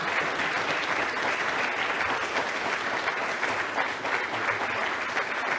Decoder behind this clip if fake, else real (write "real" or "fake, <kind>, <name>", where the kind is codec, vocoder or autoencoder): real